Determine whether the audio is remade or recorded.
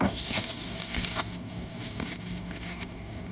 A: remade